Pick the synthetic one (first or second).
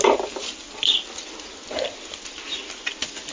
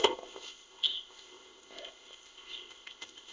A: second